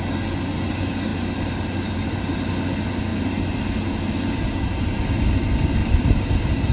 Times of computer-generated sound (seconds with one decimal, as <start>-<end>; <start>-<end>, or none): 1.1-2.5; 3.1-3.6; 5.8-6.7